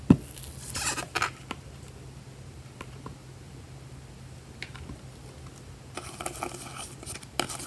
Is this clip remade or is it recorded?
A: recorded